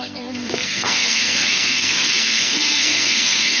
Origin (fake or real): fake